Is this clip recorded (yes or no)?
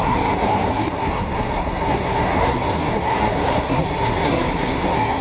no